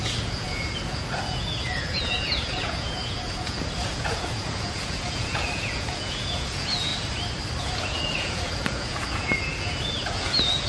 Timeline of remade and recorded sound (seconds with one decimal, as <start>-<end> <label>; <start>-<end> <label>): 0.0-6.9 remade; 6.9-7.6 recorded; 7.6-10.7 remade